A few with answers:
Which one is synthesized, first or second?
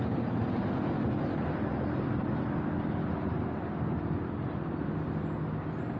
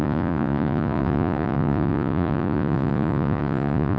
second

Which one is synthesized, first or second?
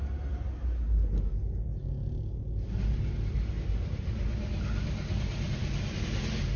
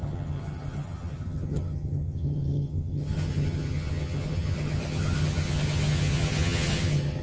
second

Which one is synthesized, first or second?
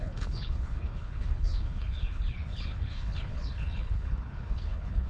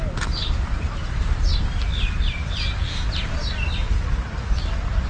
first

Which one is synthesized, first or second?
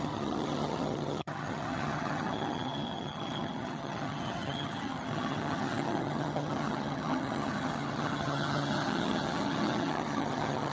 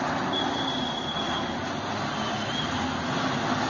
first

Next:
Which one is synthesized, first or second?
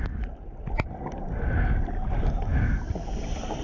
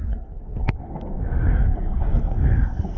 second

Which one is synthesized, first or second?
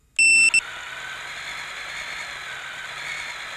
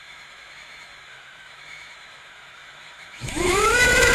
second